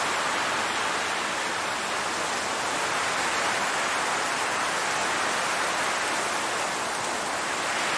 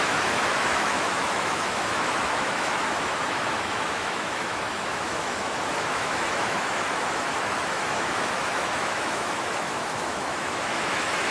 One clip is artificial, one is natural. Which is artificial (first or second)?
second